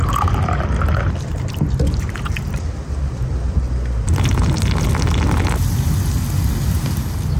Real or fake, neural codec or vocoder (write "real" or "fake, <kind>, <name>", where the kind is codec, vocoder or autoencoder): real